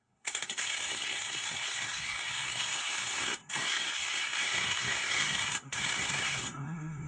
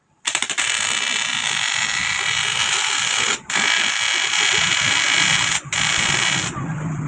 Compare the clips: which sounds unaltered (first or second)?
second